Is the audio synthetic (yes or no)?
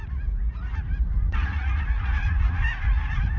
yes